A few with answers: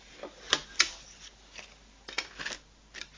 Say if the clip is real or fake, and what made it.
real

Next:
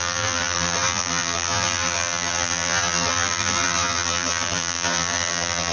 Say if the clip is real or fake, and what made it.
fake, vocoder, BigVGAN v2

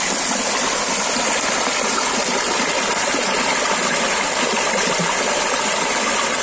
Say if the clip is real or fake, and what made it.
real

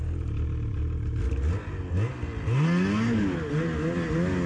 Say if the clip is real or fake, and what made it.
real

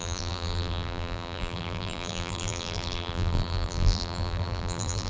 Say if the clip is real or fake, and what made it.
fake, vocoder, BigVGAN v2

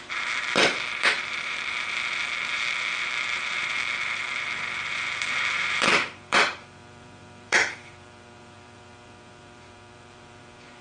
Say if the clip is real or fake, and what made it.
fake, vocoder, BigVGAN v2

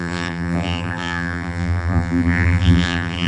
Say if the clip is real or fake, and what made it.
fake, vocoder, BigVGAN v2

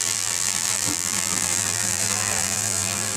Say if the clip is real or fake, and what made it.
fake, vocoder, BigVGAN v2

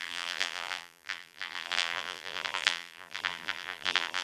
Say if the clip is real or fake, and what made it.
fake, vocoder, BigVGAN v2